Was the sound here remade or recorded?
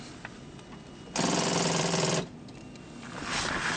remade